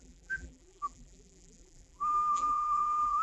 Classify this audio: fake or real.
fake